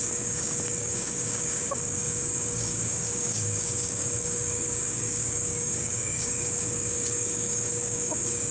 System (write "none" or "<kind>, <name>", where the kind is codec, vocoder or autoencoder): codec, DAC